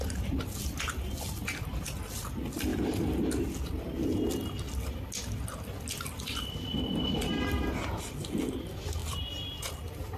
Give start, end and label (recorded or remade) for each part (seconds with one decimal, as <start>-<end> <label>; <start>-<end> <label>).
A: 0.0-1.4 recorded; 1.4-2.3 remade; 2.3-10.2 recorded